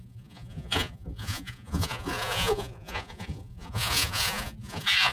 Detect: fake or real fake